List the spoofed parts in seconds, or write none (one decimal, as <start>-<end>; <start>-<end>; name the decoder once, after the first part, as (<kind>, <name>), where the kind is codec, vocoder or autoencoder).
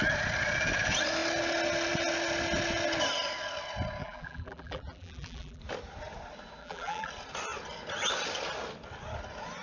4.0-5.6 (vocoder, BigVGAN v2); 6.6-7.1